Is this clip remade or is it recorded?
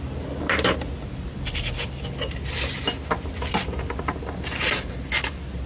recorded